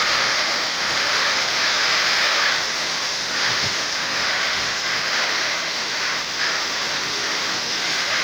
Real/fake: fake